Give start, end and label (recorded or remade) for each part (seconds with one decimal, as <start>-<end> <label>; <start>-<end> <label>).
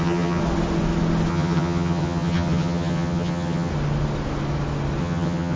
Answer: 0.0-0.4 remade; 0.4-1.3 recorded; 1.3-3.7 remade; 3.7-5.0 recorded; 5.0-5.6 remade